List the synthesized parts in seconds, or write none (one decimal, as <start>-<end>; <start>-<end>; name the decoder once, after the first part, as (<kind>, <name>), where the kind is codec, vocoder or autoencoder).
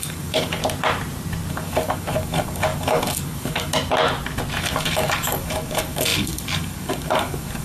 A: 0.0-0.6 (codec, DAC); 1.5-3.7; 4.6-7.6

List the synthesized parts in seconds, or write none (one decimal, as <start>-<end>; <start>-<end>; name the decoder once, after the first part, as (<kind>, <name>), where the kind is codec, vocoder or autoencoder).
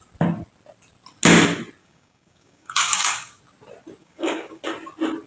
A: 1.8-3.4 (codec, DAC); 4.0-4.6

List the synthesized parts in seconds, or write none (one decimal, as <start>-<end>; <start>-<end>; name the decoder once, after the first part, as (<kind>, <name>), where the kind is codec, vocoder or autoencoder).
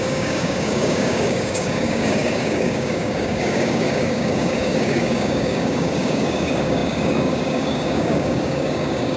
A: 0.0-9.2 (codec, DAC)